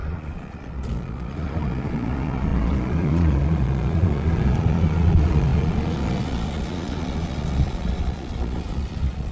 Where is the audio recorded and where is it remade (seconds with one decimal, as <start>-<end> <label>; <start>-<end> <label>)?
0.0-9.3 remade